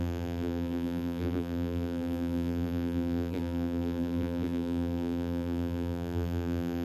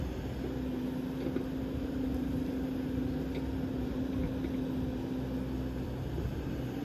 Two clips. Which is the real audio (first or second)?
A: second